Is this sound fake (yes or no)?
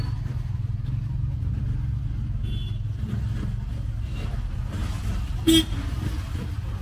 no